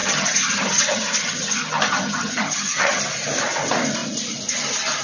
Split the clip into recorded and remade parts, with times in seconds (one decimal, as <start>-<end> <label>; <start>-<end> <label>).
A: 0.0-3.0 remade; 3.0-5.0 recorded